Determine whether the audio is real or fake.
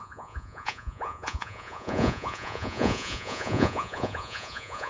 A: fake